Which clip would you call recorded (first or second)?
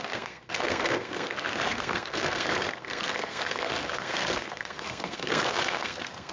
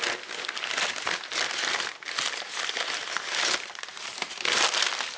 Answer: second